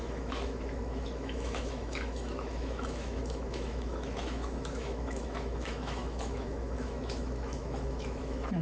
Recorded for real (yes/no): no